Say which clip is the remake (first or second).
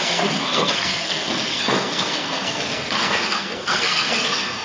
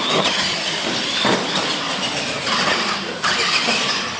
first